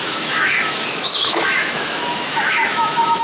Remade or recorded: remade